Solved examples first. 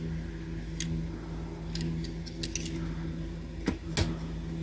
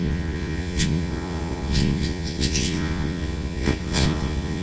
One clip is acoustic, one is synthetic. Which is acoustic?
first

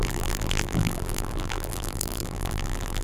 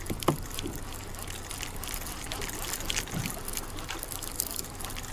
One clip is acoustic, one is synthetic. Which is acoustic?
second